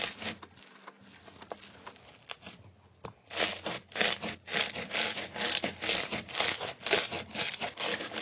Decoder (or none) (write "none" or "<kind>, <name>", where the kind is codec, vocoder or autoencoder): none